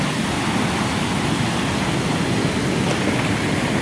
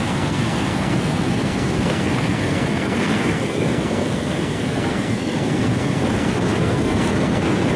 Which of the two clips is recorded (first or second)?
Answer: first